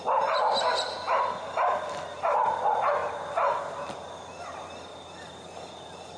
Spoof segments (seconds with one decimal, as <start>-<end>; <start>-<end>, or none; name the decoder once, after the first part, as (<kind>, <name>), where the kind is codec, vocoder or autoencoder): none